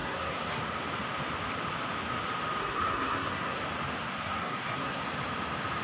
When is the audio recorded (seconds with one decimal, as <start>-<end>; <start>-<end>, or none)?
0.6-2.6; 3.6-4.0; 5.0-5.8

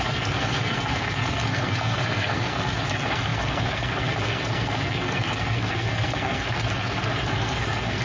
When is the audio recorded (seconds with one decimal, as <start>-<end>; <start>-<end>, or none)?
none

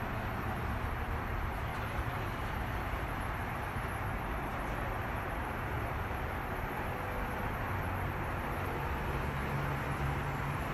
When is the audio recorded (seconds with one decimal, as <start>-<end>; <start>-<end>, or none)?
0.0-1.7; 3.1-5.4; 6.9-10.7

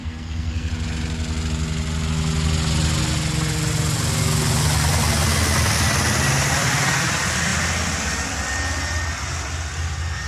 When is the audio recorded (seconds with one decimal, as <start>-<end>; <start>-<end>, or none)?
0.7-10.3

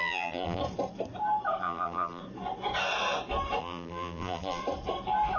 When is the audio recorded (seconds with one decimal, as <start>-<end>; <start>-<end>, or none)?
0.6-1.6; 2.2-3.6; 4.6-5.4